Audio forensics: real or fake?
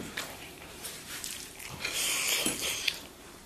fake